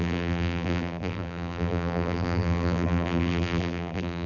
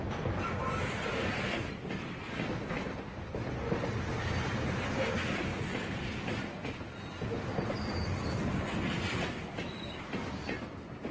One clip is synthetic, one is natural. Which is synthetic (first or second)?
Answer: first